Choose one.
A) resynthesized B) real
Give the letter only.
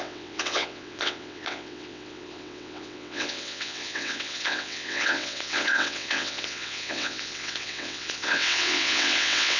A